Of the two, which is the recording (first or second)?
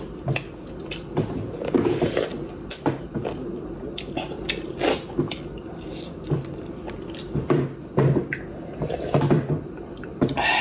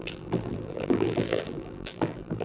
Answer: first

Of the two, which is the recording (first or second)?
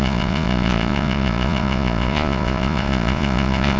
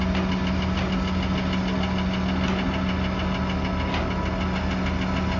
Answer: second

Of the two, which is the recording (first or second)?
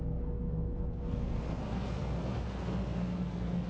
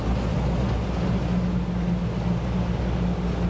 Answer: second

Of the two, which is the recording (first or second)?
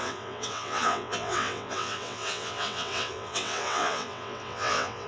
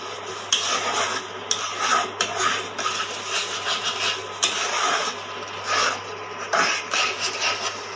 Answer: second